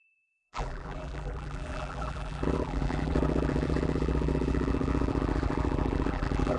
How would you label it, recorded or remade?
remade